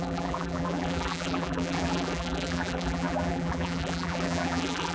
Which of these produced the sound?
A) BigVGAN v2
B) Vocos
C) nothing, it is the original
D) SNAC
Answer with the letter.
A